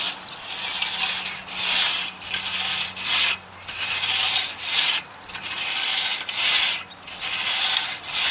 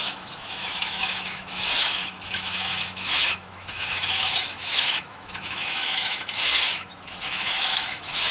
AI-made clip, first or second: second